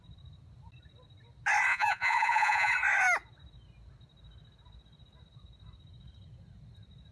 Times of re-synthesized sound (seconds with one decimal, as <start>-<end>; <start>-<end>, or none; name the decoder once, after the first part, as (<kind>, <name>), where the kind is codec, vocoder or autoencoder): 1.7-2.7 (vocoder, Vocos)